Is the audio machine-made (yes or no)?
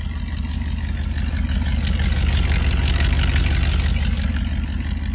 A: no